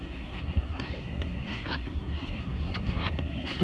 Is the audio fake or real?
fake